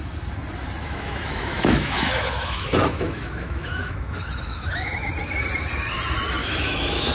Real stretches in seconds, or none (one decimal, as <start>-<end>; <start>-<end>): 0.0-0.8; 5.1-6.4